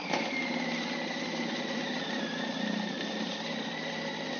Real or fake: real